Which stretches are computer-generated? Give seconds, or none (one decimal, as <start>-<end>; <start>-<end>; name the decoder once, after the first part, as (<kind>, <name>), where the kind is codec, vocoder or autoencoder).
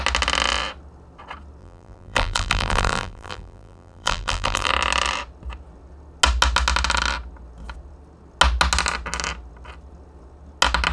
1.6-4.7 (vocoder, BigVGAN v2)